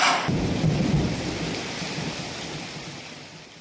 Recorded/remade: recorded